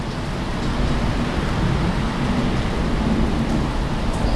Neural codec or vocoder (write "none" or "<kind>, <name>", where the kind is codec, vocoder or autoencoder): none